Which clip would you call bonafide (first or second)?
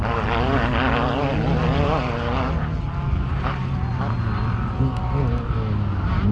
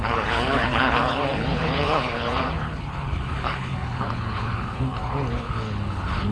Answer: first